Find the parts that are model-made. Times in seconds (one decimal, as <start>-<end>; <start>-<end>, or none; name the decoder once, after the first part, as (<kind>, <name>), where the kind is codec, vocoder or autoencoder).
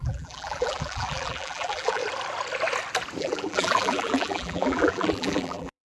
0.0-2.0 (vocoder, BigVGAN v2); 3.2-5.9